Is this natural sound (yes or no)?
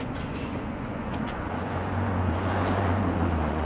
no